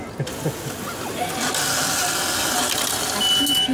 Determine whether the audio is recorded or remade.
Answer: recorded